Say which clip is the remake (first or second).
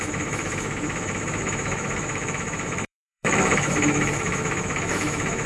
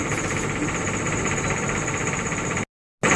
first